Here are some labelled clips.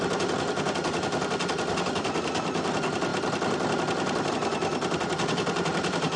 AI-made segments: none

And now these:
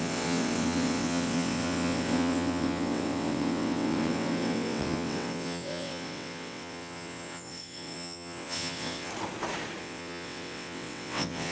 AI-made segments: 0.0-9.1 (vocoder, WaveNeXt); 9.8-11.5

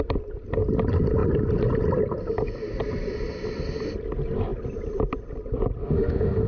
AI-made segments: 5.8-6.5 (autoencoder, DAC-VAE)

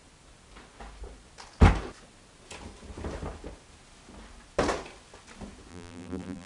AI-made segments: 5.7-6.5 (vocoder, BigVGAN v2)

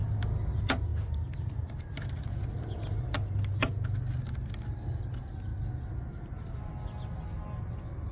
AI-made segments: none

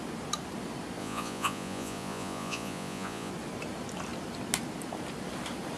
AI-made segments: 1.0-3.3 (vocoder, Vocos)

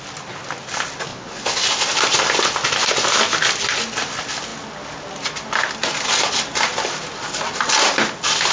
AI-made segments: 1.1-1.6 (vocoder, Vocos)

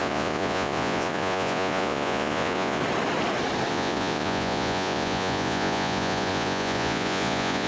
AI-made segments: 0.0-2.8 (vocoder, Vocos); 3.7-7.7